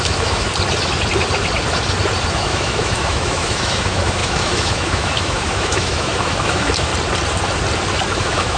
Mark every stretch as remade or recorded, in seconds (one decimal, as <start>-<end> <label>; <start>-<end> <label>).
0.0-0.5 remade; 0.5-2.3 recorded; 2.3-6.9 remade; 6.9-8.2 recorded; 8.2-8.6 remade